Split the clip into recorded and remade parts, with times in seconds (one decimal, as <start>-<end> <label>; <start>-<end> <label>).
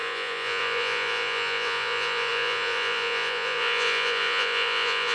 0.0-5.1 remade